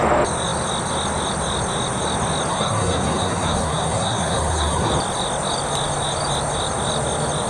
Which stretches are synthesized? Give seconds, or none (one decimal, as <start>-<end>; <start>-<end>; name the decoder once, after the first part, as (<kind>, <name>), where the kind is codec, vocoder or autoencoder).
2.5-4.9 (codec, SNAC)